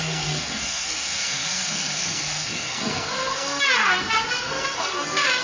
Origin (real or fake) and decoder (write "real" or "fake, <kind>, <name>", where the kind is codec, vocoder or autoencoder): fake, codec, SNAC